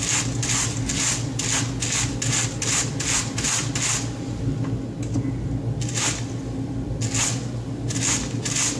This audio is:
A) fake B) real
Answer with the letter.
B